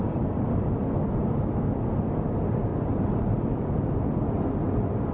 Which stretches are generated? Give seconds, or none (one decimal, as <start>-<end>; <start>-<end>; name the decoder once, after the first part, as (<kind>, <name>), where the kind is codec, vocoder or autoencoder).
none